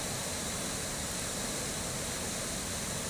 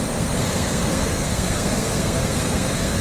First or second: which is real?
first